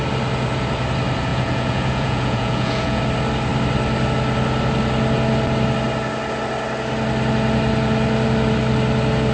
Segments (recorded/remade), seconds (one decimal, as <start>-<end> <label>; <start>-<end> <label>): 0.0-1.3 recorded; 1.3-3.0 remade; 3.0-9.3 recorded